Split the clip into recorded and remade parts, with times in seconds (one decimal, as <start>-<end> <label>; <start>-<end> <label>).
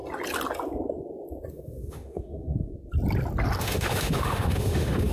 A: 0.0-1.5 recorded; 1.5-2.7 remade; 2.7-3.6 recorded; 3.6-5.1 remade